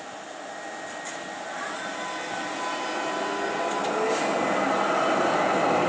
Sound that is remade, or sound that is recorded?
recorded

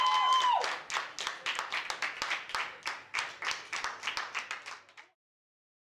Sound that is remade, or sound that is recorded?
recorded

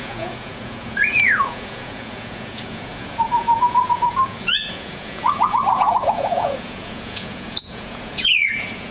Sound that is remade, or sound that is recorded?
remade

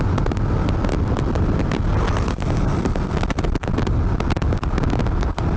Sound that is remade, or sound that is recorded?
recorded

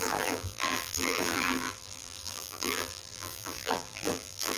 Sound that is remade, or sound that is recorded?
remade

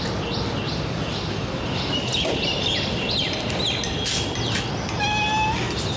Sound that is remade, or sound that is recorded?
recorded